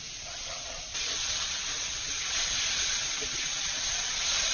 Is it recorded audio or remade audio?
remade